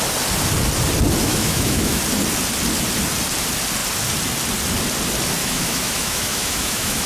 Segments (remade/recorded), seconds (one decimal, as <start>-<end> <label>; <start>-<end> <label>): 0.0-1.2 recorded; 1.2-2.0 remade; 2.0-5.4 recorded; 5.4-7.1 remade